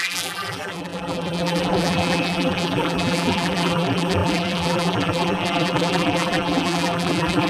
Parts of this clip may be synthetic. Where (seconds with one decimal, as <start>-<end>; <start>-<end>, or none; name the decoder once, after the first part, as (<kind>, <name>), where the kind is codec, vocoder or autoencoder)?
0.0-7.5 (vocoder, BigVGAN v2)

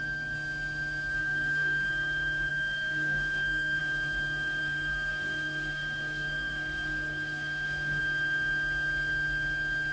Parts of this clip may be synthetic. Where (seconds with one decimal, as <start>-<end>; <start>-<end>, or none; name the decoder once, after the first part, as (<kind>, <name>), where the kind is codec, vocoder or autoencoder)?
1.2-1.9 (codec, SNAC); 2.5-3.8; 4.6-8.0

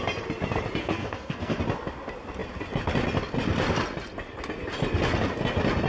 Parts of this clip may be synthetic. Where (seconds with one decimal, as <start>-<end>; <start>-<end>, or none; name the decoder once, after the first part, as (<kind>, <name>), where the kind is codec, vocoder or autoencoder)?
0.8-1.6 (codec, SNAC)